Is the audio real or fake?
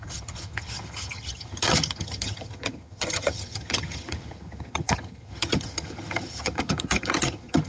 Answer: fake